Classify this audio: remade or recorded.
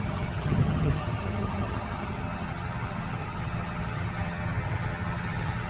remade